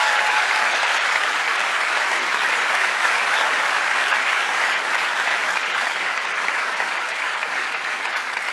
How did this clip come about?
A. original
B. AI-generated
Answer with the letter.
B